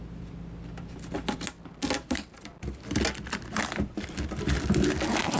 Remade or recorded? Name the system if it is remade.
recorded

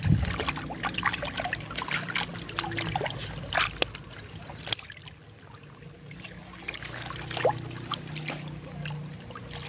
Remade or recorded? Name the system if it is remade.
recorded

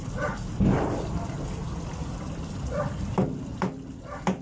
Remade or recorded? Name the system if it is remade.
recorded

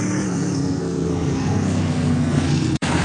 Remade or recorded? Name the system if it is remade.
remade, codec, SNAC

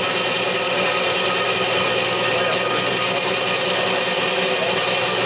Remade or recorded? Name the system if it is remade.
recorded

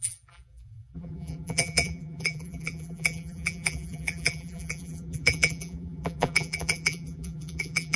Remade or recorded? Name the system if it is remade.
remade, vocoder, BigVGAN v2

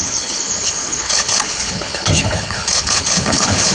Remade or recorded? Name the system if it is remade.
remade, codec, HILCodec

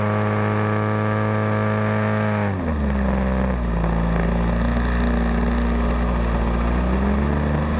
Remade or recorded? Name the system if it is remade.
recorded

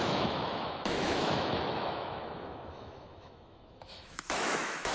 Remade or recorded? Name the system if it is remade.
remade, autoencoder, DAC-VAE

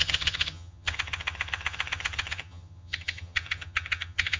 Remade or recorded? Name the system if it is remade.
remade, vocoder, HiFi-GAN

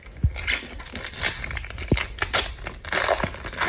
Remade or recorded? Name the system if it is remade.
recorded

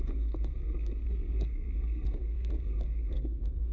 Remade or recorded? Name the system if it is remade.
remade, codec, SNAC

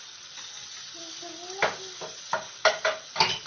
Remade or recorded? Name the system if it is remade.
recorded